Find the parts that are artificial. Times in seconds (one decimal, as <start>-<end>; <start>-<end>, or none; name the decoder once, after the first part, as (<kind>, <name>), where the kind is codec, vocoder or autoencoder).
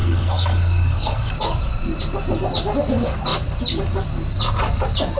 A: 0.0-1.3 (codec, SNAC)